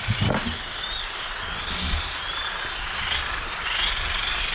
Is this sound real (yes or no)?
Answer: yes